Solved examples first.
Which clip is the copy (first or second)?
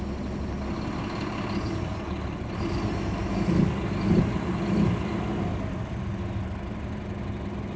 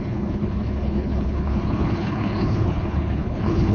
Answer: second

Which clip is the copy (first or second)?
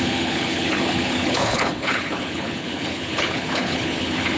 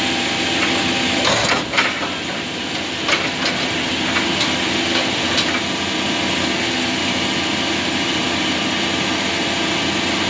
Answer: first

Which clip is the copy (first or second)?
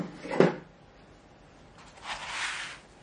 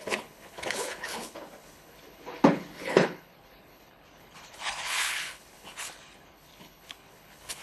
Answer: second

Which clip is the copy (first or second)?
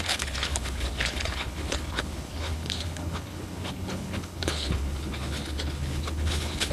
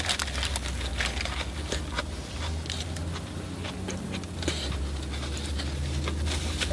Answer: first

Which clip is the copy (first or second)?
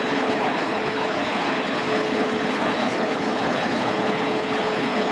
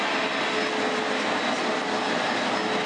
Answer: first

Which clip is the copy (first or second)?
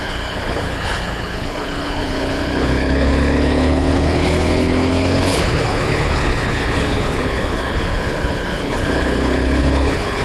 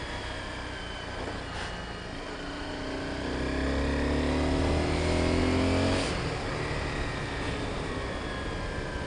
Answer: first